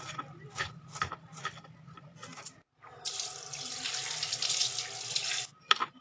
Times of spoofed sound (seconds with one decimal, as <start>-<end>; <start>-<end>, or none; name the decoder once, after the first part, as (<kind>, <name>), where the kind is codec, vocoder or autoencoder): none